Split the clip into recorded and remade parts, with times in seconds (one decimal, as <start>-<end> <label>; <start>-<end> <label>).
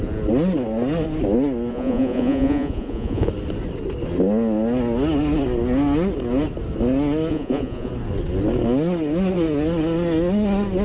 0.0-1.7 recorded; 1.7-3.3 remade; 3.3-7.3 recorded; 7.3-7.9 remade; 7.9-10.8 recorded